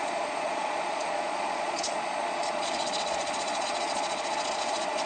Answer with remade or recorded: remade